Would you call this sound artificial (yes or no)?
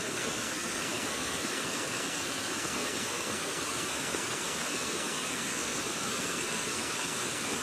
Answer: yes